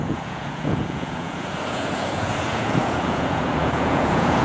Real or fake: fake